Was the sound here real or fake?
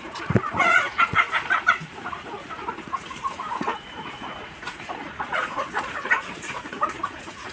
fake